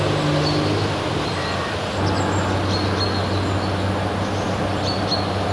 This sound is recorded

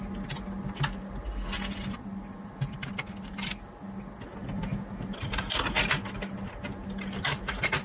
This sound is recorded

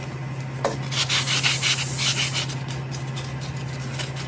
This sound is recorded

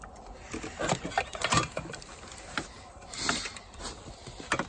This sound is recorded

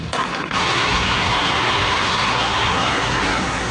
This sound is remade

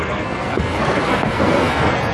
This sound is remade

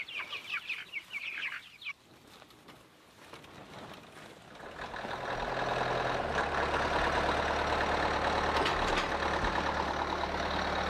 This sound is recorded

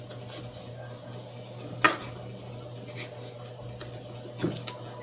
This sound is recorded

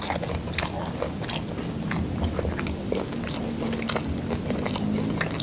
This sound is recorded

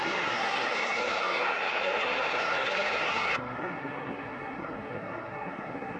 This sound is remade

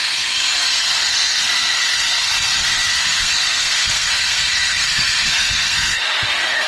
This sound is remade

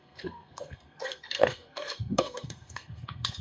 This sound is remade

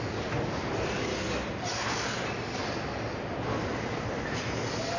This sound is recorded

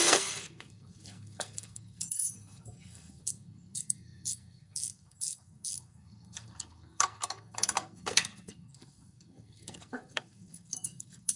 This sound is remade